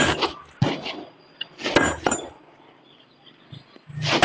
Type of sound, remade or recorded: recorded